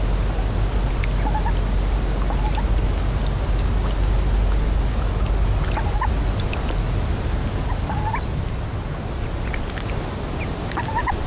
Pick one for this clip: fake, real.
real